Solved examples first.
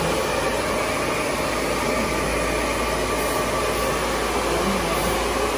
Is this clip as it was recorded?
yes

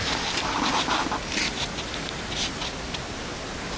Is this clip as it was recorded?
yes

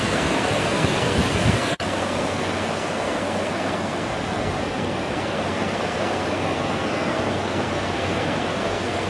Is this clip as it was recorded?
no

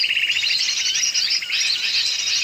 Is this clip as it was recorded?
yes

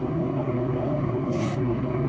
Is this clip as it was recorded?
no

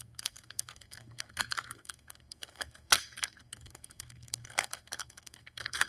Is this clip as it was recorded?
no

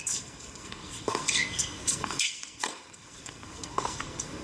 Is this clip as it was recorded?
no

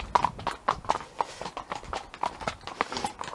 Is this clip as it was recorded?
yes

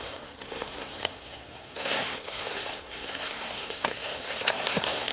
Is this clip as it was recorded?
no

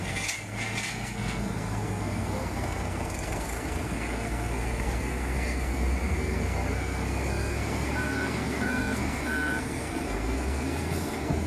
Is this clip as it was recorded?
no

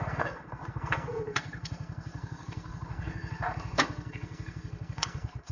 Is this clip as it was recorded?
no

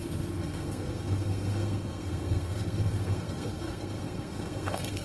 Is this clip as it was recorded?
no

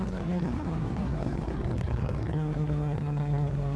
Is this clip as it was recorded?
no